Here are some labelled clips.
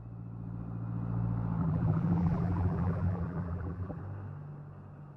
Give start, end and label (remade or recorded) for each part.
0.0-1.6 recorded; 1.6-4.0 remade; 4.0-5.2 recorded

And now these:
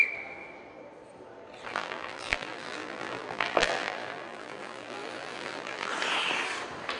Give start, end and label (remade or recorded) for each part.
0.0-1.7 recorded; 1.7-5.9 remade; 5.9-7.0 recorded

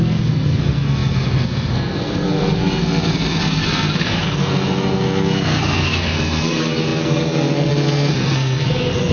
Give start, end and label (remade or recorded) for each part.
0.0-9.1 remade

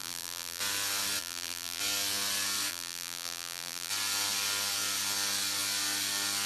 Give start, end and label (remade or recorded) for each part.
0.0-0.6 remade; 0.6-1.2 recorded; 1.2-1.8 remade; 1.8-2.7 recorded; 2.7-3.9 remade; 3.9-6.5 recorded

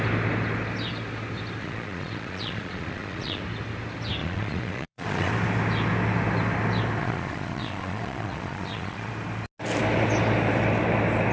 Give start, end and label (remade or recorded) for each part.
0.0-1.6 recorded; 1.6-3.4 remade; 3.4-4.2 recorded; 4.2-5.3 remade; 5.3-7.0 recorded; 7.0-9.1 remade; 9.1-11.3 recorded

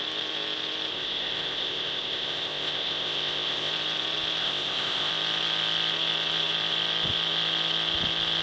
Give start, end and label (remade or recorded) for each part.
0.0-0.9 recorded; 0.9-3.7 remade; 3.7-4.4 recorded; 4.4-5.1 remade; 5.1-8.4 recorded

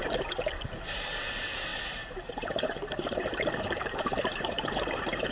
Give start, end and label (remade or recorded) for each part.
0.0-1.7 recorded; 1.7-5.3 remade

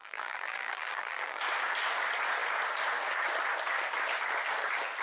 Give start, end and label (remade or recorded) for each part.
0.0-1.4 remade; 1.4-5.0 recorded